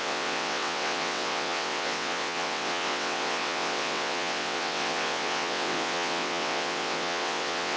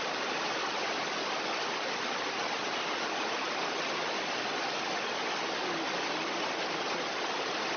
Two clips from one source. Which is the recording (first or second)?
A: second